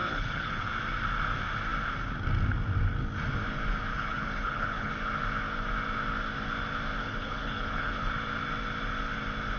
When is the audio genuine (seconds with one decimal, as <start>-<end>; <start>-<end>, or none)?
0.7-3.9; 4.9-7.0; 8.1-9.6